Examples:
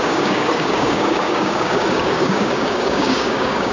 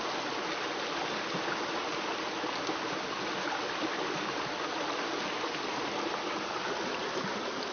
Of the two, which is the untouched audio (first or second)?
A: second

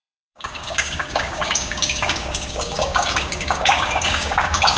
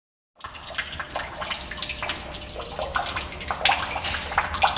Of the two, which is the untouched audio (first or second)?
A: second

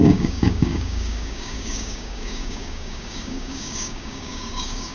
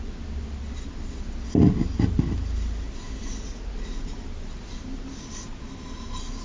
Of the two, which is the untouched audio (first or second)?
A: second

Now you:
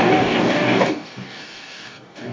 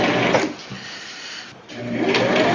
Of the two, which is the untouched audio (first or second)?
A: second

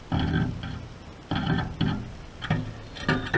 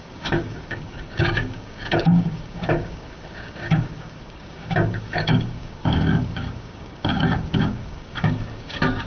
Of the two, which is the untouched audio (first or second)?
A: first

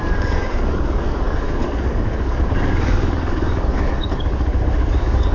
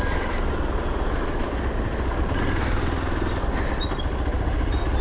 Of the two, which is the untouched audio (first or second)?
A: second